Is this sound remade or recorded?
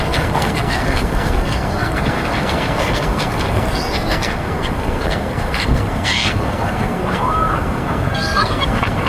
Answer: remade